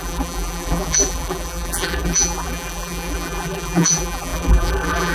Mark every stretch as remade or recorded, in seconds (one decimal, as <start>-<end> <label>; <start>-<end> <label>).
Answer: 0.0-5.1 remade